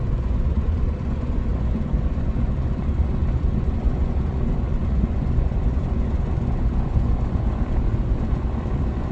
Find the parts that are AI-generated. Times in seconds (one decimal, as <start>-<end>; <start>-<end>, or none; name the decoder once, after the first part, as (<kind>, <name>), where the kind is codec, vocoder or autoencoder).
0.0-9.1 (vocoder, Vocos)